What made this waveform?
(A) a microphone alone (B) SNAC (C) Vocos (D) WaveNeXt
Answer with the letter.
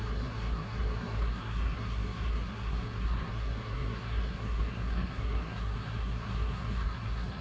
B